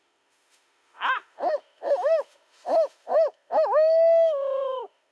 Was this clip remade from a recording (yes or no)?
yes